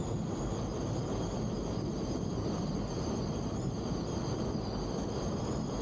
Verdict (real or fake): real